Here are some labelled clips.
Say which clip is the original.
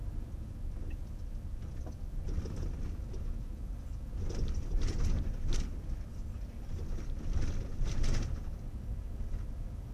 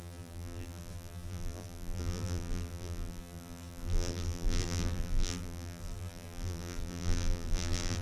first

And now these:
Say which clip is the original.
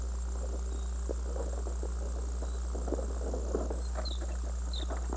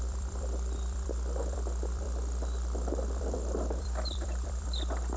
first